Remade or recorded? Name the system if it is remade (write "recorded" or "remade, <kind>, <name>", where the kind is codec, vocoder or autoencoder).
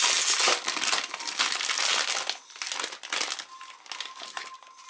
recorded